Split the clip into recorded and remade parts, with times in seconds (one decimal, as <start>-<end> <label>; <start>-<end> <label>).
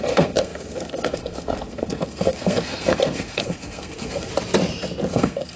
0.0-4.3 remade; 4.3-5.1 recorded; 5.1-5.6 remade